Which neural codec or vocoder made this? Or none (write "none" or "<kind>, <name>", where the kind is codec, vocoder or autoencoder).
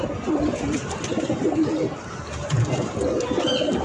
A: none